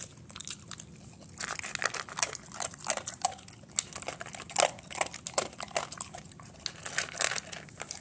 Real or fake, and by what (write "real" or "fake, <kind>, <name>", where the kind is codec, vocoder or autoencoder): real